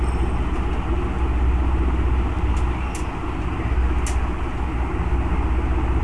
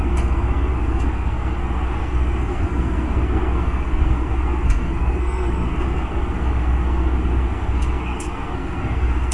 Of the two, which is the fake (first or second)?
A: second